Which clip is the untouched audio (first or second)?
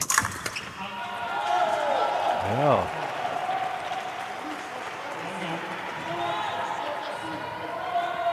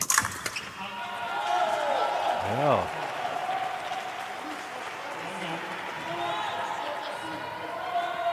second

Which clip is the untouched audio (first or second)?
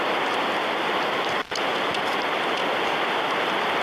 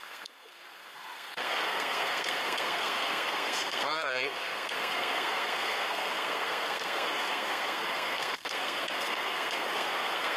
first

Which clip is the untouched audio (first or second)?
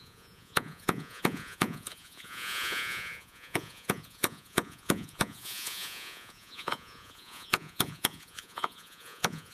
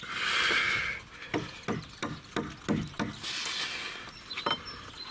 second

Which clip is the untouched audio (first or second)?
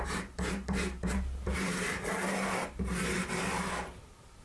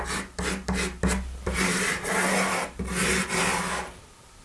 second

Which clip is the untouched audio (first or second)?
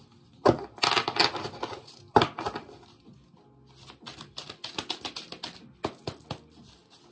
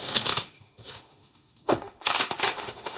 first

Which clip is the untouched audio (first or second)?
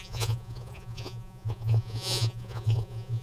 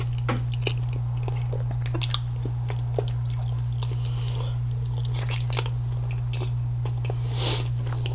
second